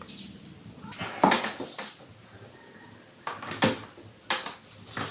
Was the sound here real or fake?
real